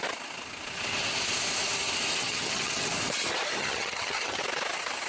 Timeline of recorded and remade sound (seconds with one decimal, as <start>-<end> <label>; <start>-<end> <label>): 0.0-2.1 recorded; 2.1-2.9 remade; 2.9-3.6 recorded; 3.6-4.4 remade; 4.4-5.1 recorded